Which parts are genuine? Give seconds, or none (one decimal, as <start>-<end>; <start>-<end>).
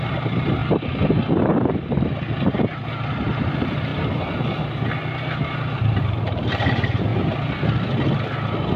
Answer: 0.6-2.9; 3.9-5.4; 7.1-8.8